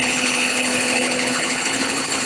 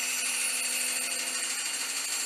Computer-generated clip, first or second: first